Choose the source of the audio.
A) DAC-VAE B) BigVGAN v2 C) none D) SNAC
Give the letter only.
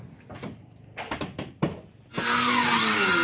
C